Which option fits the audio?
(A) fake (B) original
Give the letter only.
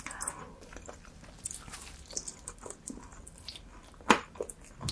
B